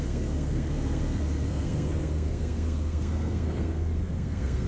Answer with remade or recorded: remade